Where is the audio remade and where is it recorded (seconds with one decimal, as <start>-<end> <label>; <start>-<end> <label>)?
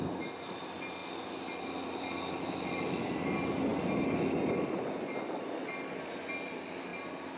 0.0-7.4 recorded